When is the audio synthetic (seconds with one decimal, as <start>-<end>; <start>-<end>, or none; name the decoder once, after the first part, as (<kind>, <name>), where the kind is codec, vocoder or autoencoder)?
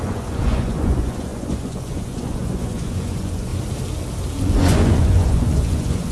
0.0-3.5 (vocoder, Vocos); 4.4-6.1